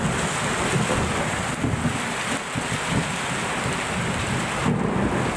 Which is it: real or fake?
real